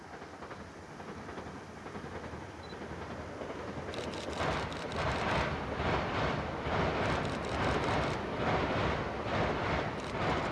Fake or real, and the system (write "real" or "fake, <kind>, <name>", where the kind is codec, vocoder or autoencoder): real